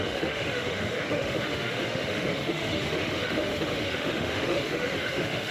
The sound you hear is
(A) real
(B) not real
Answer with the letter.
B